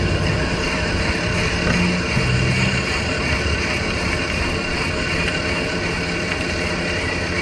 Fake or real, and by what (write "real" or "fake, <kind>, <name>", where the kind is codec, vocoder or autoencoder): real